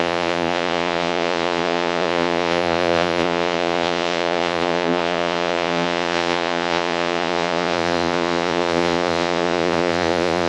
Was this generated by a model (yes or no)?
yes